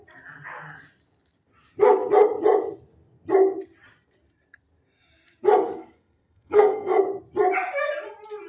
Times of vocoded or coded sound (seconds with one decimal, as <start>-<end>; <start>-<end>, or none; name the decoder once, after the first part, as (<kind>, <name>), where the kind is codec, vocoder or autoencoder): 5.8-7.0 (codec, SNAC)